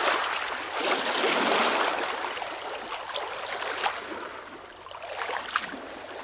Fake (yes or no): no